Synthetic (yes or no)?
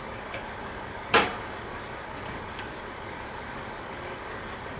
yes